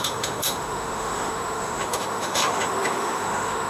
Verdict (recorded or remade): remade